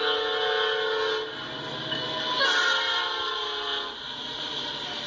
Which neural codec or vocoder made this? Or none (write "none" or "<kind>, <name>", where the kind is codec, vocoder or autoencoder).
none